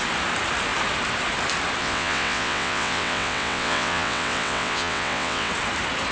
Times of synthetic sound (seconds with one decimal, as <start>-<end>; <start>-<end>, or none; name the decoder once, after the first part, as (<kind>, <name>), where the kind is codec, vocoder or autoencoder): 1.8-5.5 (vocoder, WaveNeXt)